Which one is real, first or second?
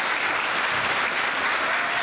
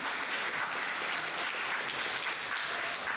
second